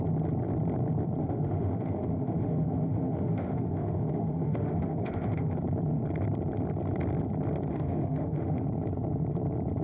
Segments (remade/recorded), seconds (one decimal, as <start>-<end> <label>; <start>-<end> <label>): 0.0-1.2 recorded; 1.2-5.6 remade; 5.6-7.7 recorded; 7.7-8.6 remade; 8.6-9.8 recorded